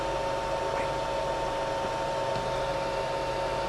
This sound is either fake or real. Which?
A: real